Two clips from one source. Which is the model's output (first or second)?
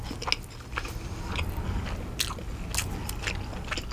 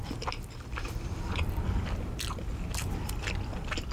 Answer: second